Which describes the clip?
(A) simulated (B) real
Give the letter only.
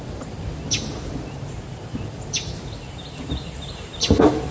B